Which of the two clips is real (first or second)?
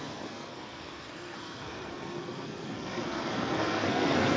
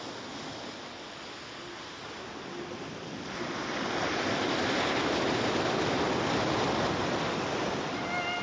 second